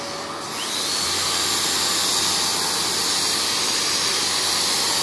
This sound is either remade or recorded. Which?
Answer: recorded